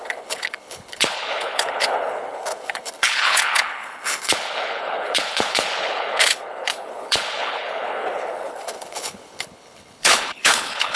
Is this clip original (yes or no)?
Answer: no